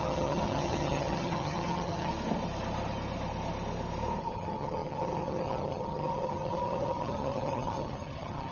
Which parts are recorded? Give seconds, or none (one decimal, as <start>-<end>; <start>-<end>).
2.1-4.2